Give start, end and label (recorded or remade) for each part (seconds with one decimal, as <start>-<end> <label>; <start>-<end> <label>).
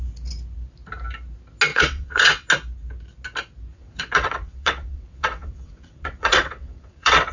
0.0-1.7 recorded; 1.7-2.5 remade; 2.5-3.7 recorded; 3.7-7.3 remade